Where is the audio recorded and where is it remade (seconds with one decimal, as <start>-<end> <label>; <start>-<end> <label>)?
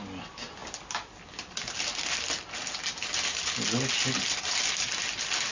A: 0.0-5.5 recorded